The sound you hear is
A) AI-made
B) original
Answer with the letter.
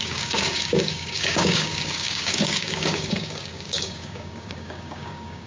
A